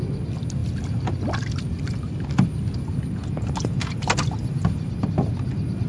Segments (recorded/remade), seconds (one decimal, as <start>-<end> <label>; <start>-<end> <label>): 0.0-0.6 recorded; 0.6-3.0 remade; 3.0-5.9 recorded